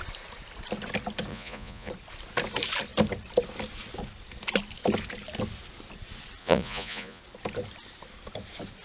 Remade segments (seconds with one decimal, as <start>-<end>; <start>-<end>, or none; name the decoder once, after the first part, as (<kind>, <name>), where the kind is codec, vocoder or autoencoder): 1.3-1.9 (vocoder, Vocos); 6.4-7.2